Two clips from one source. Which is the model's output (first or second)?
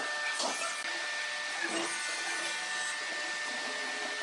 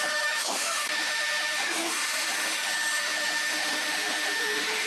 second